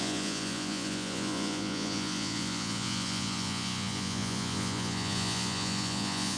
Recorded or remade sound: remade